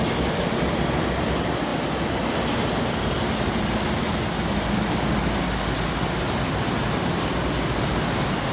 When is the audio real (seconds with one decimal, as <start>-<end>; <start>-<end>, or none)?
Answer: 0.0-8.5